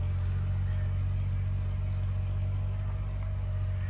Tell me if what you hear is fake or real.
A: real